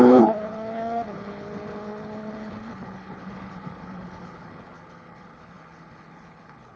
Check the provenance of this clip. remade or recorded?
remade